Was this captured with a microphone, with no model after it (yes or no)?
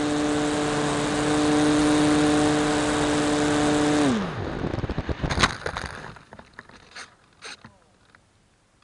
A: yes